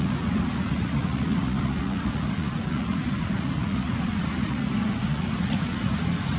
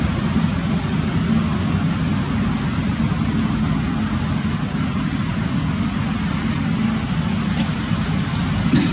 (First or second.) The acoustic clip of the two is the second